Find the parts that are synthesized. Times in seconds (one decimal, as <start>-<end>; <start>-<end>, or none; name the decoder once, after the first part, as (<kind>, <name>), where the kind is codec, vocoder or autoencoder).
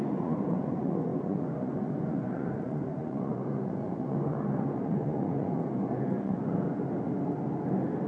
0.0-6.8 (vocoder, Vocos)